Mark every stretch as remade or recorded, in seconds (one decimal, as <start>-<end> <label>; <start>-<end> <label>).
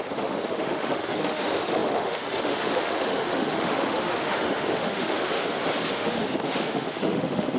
0.0-5.4 remade; 5.4-5.9 recorded; 5.9-7.6 remade